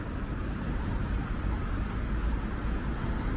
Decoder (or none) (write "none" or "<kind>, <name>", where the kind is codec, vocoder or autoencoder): none